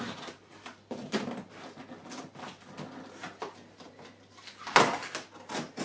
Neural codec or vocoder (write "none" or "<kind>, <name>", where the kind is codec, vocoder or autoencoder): none